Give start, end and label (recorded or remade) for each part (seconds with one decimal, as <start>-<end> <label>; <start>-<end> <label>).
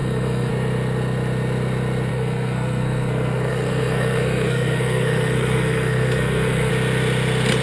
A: 0.0-0.5 remade; 0.5-2.1 recorded; 2.1-6.7 remade; 6.7-7.6 recorded